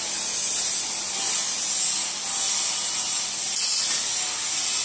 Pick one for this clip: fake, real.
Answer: real